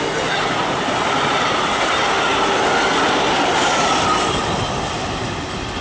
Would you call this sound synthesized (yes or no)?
no